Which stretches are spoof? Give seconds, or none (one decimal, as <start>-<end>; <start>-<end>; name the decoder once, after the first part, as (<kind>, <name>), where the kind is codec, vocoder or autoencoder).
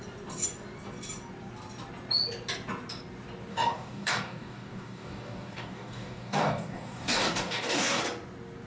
3.5-8.0 (codec, DAC)